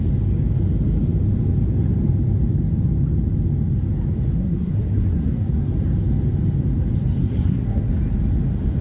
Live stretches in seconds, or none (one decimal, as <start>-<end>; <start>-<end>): 0.0-4.4; 5.7-7.2; 7.9-8.8